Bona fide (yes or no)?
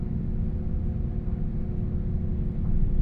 yes